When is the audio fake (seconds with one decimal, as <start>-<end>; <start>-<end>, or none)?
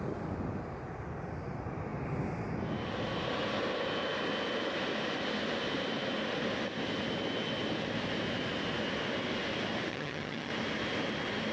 9.9-10.5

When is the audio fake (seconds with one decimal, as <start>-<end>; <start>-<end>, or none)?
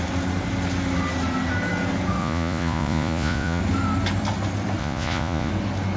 2.2-3.6; 4.8-5.5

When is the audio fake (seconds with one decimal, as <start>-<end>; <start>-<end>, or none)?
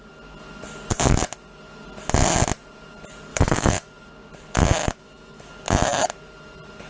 3.3-3.9; 4.8-5.5